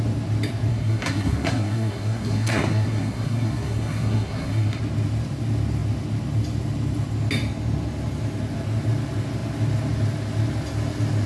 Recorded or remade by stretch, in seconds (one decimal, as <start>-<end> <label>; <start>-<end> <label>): 0.0-0.7 recorded; 0.7-4.8 remade; 4.8-11.3 recorded